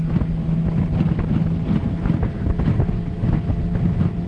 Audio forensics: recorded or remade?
recorded